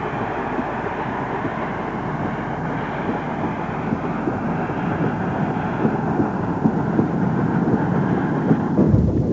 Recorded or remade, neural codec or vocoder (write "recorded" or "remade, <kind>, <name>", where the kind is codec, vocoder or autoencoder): recorded